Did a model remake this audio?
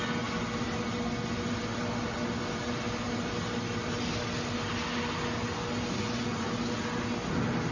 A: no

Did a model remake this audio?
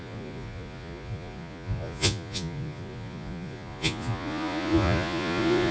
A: yes